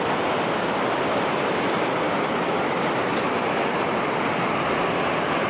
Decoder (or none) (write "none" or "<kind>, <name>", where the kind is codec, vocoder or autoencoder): none